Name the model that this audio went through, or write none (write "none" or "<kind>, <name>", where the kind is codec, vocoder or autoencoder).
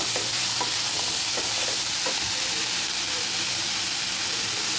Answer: none